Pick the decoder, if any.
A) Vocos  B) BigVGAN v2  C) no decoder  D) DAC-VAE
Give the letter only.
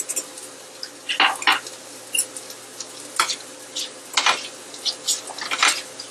C